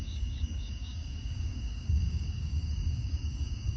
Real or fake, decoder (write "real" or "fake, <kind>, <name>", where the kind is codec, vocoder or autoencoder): fake, codec, DAC